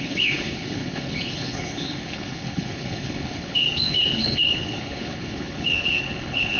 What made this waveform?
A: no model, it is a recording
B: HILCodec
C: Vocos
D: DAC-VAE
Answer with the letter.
B